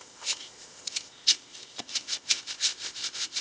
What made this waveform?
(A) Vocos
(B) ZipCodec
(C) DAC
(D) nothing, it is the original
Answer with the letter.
B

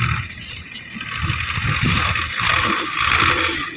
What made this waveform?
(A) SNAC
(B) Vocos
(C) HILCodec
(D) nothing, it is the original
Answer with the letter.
D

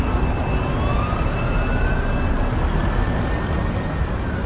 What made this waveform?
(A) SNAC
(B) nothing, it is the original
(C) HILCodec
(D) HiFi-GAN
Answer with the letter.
B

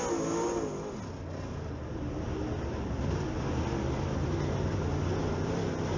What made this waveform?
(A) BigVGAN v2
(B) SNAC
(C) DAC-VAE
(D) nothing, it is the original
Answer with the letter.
D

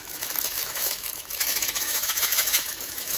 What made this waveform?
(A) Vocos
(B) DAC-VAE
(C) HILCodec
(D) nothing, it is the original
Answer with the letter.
B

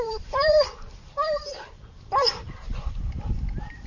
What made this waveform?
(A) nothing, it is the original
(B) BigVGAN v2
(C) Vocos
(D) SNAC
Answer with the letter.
B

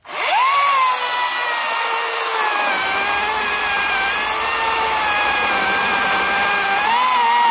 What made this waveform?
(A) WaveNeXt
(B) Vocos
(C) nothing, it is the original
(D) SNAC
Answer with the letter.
C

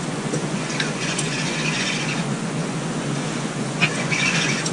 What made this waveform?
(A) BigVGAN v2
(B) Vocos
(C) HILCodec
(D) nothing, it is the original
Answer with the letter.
B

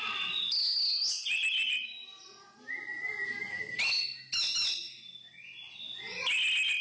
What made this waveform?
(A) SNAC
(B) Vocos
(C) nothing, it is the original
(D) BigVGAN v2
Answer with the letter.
C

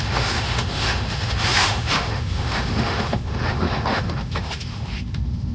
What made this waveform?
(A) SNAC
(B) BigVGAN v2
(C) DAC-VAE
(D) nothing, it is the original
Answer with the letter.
C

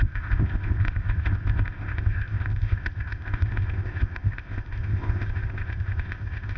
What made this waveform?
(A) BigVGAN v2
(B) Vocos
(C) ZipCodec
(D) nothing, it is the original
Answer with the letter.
C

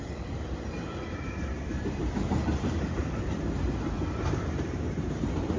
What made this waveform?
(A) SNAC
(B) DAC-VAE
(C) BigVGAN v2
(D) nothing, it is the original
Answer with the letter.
C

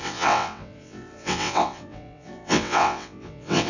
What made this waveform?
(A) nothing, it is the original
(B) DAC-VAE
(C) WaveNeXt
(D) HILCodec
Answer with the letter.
C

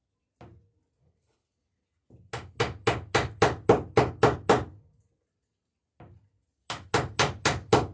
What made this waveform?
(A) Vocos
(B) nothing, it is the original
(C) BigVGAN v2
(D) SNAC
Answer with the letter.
B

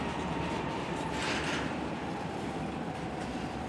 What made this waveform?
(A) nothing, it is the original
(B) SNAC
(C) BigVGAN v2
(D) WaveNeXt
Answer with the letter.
C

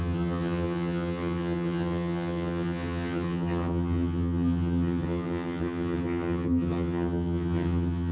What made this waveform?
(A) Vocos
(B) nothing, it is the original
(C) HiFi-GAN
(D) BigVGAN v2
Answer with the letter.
C